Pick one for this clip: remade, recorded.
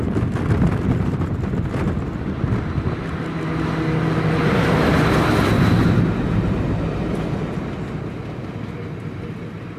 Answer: recorded